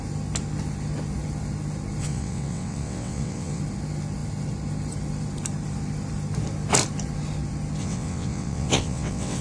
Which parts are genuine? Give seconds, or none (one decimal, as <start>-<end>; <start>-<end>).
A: 0.0-2.0; 3.6-7.8